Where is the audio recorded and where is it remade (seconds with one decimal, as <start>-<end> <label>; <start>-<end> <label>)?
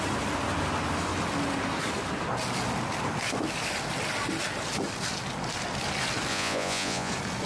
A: 0.0-6.3 recorded; 6.3-7.1 remade; 7.1-7.5 recorded